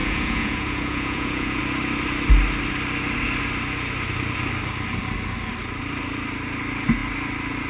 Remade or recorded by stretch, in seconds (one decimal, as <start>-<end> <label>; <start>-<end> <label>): 0.0-1.6 remade; 1.6-7.7 recorded

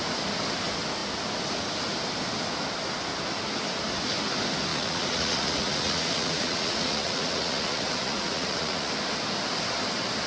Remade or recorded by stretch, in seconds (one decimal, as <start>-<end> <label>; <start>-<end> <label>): 0.0-4.7 recorded; 4.7-8.9 remade; 8.9-10.3 recorded

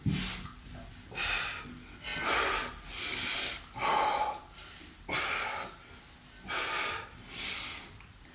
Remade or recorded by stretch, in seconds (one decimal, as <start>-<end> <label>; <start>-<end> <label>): 0.0-8.3 recorded

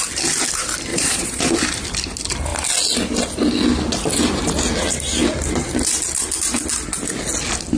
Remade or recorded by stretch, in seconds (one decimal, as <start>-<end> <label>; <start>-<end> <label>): 0.0-0.9 recorded; 0.9-1.4 remade; 1.4-7.8 recorded

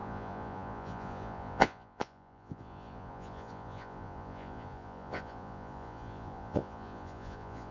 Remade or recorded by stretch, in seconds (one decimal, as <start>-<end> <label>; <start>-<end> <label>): 0.0-7.7 remade

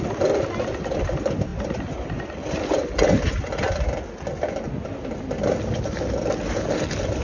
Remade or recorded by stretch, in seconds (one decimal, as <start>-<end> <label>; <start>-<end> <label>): 0.0-7.2 recorded

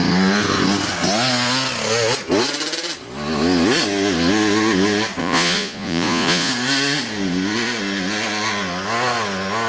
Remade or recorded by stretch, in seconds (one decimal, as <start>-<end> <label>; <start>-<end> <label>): 0.0-5.2 recorded; 5.2-6.5 remade; 6.5-9.7 recorded